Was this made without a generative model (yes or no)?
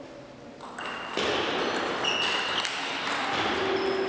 yes